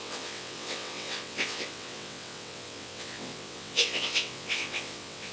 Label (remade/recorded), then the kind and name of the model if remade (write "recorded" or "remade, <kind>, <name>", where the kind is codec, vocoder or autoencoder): remade, vocoder, WaveNeXt